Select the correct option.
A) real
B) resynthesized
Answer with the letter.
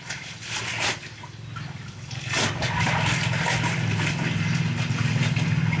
A